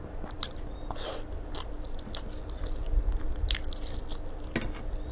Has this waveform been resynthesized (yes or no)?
no